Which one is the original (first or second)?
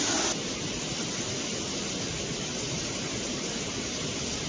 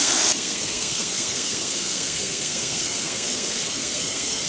first